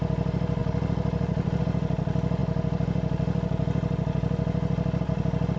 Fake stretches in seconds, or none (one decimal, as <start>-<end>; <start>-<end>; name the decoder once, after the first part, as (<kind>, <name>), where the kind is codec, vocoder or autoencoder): 0.6-1.6 (vocoder, BigVGAN v2)